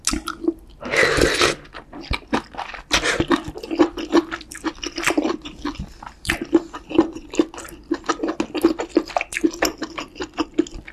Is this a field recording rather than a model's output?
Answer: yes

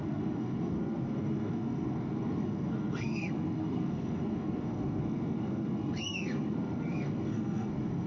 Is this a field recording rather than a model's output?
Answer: no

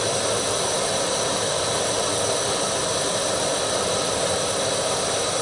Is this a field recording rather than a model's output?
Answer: yes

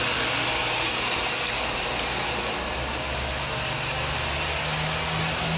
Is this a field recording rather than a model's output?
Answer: yes